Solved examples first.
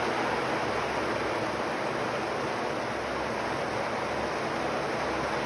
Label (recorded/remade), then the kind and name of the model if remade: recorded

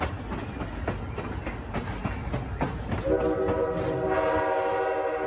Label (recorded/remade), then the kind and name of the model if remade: recorded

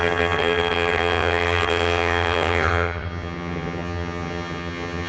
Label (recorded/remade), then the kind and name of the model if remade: remade, vocoder, HiFi-GAN